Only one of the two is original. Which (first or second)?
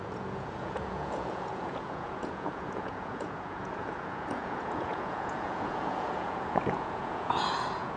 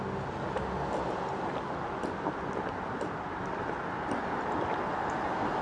second